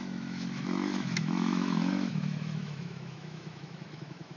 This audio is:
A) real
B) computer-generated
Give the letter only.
B